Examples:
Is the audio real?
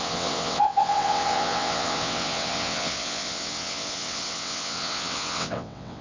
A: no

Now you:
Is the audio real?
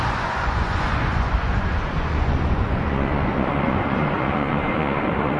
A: no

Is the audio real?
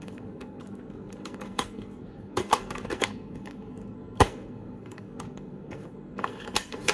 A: no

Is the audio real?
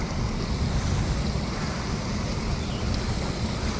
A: yes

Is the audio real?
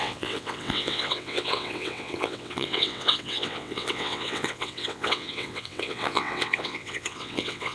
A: no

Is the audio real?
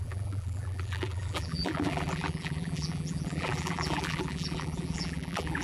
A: no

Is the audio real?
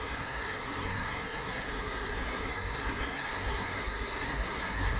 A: no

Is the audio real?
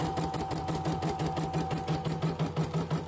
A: yes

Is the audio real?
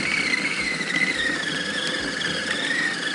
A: yes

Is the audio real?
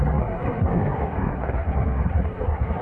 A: no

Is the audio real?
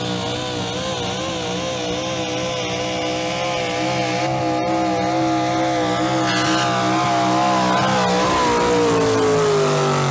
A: yes